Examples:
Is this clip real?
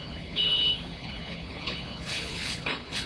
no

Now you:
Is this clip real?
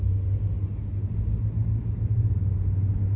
yes